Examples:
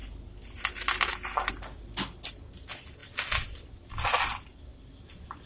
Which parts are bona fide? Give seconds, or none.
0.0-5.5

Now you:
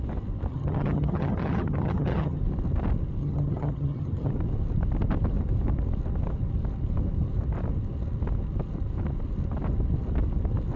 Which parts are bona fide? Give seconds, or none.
0.0-0.5; 2.4-3.2; 4.3-10.8

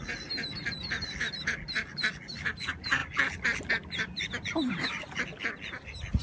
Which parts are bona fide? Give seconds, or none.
0.0-6.2

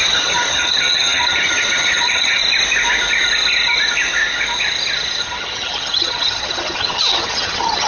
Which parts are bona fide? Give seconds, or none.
2.4-5.2

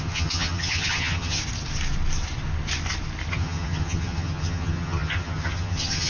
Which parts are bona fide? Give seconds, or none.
1.4-3.3

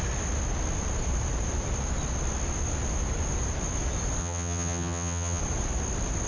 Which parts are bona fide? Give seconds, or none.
0.0-4.2; 5.4-6.3